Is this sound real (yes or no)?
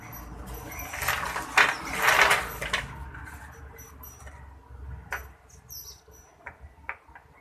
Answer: yes